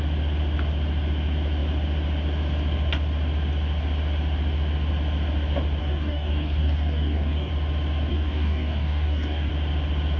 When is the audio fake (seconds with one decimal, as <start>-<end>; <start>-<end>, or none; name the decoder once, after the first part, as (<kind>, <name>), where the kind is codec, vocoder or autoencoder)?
5.8-7.5 (codec, DAC); 8.1-9.5